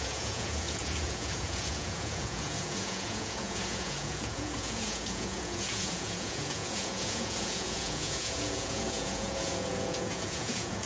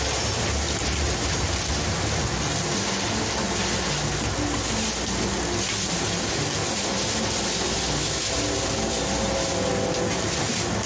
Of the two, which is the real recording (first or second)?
second